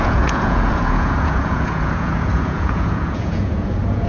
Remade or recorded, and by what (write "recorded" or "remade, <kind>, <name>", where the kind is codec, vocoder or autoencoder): remade, vocoder, Vocos